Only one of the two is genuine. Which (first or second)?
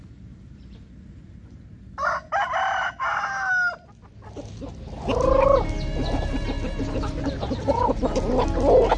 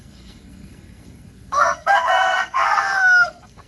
first